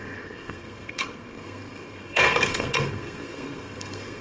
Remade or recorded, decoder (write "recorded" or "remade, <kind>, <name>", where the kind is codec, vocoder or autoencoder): remade, codec, SNAC